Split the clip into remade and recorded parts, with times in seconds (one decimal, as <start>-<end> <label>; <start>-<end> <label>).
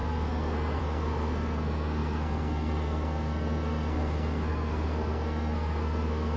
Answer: 0.0-6.4 remade